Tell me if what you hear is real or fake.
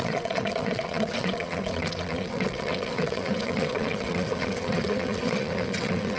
fake